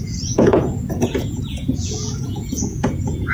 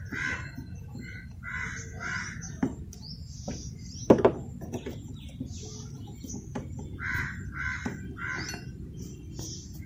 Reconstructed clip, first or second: first